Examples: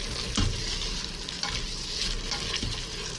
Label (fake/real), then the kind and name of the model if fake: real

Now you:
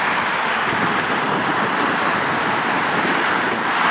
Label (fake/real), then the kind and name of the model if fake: real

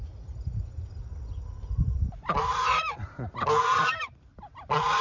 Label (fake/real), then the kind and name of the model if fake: real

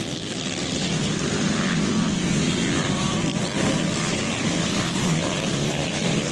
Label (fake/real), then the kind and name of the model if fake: fake, vocoder, BigVGAN v2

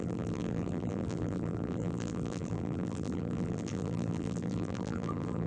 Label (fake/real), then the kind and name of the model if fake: fake, vocoder, BigVGAN v2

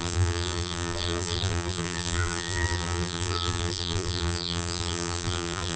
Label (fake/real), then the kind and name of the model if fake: fake, vocoder, BigVGAN v2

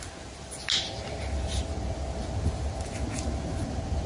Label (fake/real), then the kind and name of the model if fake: real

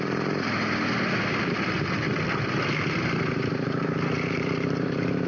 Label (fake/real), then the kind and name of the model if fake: fake, vocoder, BigVGAN v2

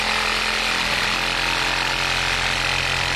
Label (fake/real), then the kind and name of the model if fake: real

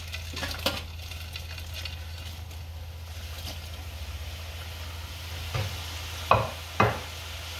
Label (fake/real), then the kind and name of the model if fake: real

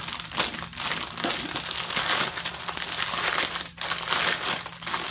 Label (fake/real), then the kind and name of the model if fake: real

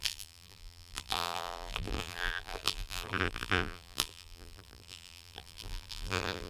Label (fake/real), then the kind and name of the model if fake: fake, vocoder, BigVGAN v2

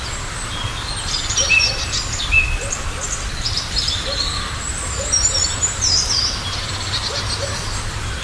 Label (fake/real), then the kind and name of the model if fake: fake, vocoder, BigVGAN v2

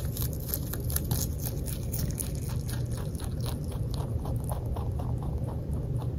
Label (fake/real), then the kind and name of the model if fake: real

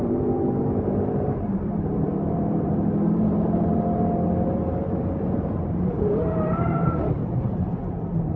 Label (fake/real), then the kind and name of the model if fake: fake, vocoder, BigVGAN v2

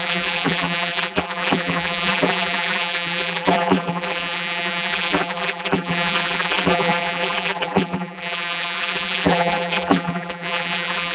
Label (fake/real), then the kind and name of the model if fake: fake, vocoder, BigVGAN v2